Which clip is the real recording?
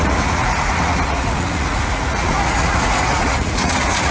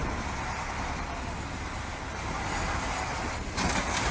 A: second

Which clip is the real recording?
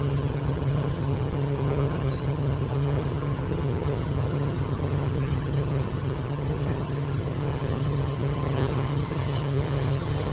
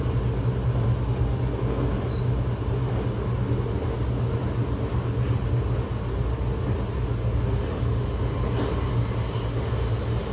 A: second